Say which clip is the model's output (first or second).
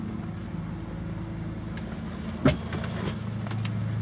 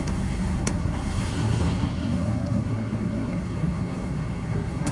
second